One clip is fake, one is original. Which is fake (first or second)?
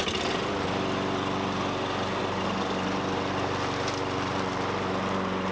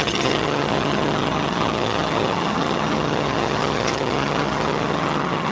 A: second